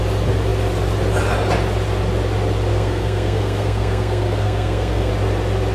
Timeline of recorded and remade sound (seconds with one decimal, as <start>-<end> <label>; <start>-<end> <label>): 0.0-2.7 recorded; 2.7-5.1 remade; 5.1-5.7 recorded